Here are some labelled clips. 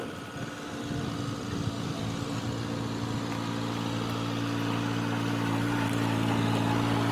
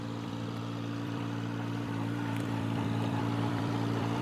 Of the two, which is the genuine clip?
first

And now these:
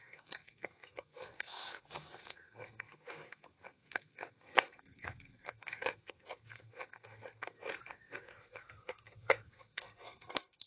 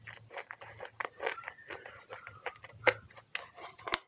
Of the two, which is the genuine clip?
second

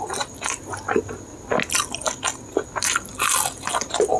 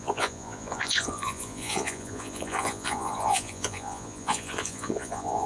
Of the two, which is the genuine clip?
first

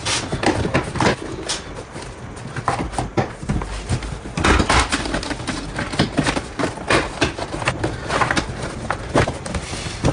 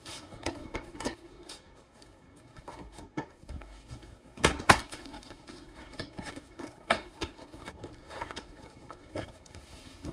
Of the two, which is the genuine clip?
first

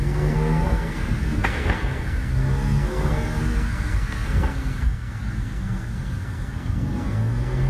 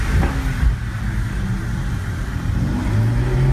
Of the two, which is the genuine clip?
second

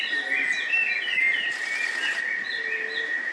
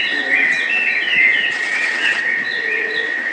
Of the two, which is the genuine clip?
first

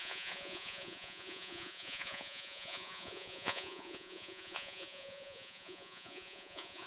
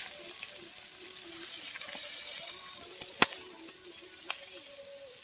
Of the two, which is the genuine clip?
second